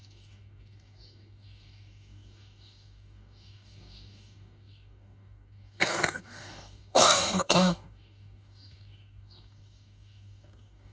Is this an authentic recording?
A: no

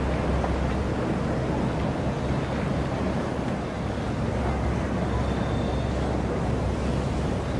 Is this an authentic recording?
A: yes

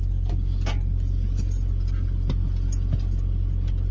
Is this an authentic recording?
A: yes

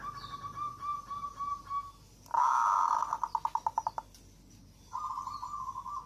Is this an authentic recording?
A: yes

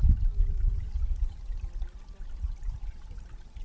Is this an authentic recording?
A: yes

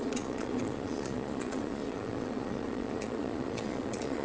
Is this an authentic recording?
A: no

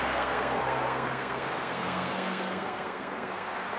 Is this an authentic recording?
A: no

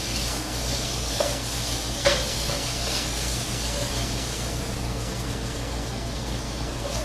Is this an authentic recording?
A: no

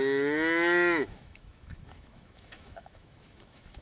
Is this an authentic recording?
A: no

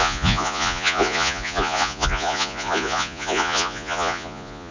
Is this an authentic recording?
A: no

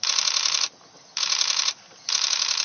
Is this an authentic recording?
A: no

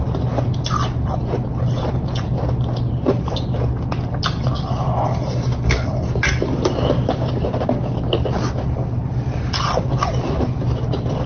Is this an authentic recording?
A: yes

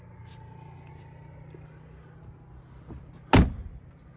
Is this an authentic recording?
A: yes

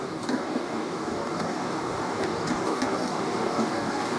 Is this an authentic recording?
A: no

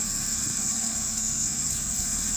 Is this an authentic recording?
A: no